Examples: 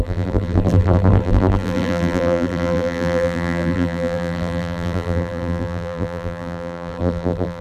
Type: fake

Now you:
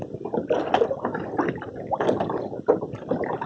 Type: real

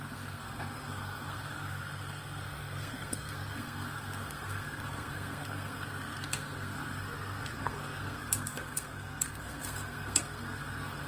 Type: fake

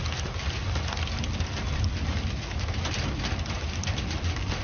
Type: real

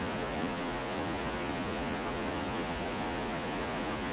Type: fake